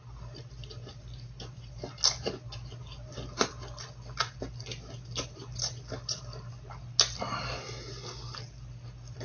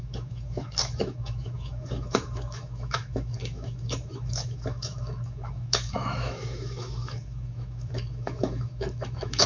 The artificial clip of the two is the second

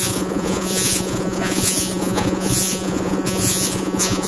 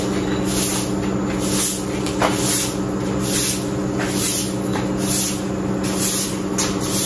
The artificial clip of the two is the first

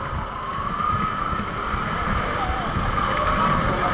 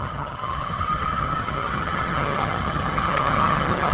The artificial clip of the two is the second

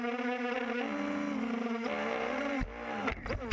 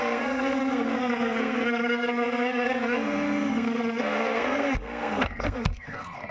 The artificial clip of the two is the second